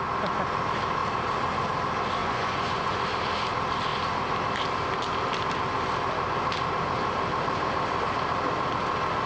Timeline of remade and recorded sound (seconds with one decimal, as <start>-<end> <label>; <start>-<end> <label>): 0.0-2.2 recorded; 2.2-3.0 remade; 3.0-9.3 recorded